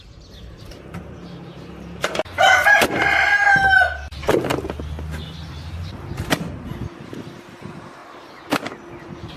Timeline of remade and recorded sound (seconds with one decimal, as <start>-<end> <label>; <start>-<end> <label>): 0.0-4.5 remade; 4.5-5.8 recorded; 5.8-8.0 remade; 8.0-9.0 recorded; 9.0-9.4 remade